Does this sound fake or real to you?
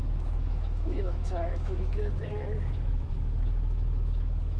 fake